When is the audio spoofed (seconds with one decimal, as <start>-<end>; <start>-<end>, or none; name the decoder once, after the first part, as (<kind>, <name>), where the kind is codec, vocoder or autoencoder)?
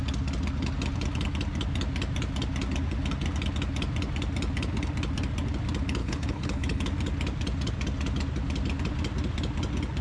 6.0-6.8 (codec, HILCodec)